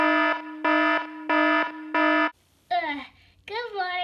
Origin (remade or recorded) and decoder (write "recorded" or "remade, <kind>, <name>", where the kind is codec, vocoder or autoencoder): recorded